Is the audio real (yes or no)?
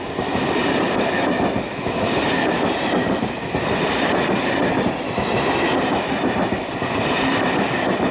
no